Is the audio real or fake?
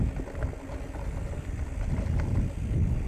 real